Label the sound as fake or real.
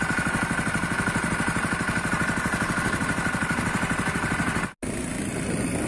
real